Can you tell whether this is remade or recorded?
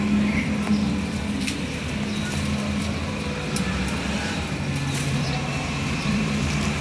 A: remade